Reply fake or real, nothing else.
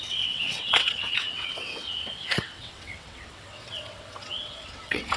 fake